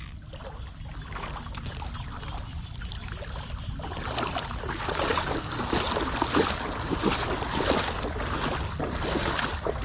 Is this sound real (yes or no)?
yes